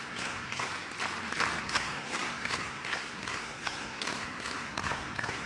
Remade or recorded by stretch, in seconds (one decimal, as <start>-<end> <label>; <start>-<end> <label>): 0.0-0.7 remade; 0.7-1.6 recorded; 1.6-5.5 remade